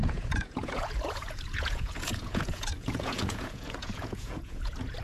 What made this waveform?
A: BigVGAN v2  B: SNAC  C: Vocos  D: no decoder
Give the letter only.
C